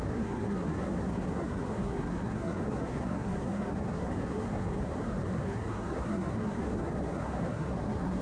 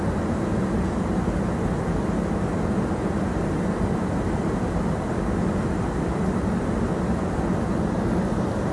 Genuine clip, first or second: second